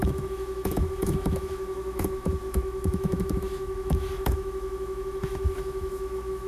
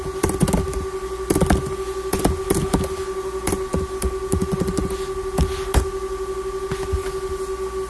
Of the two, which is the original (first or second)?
second